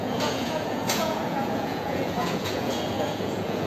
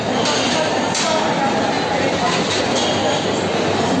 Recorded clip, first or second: second